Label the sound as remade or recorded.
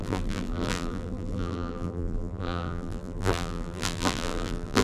remade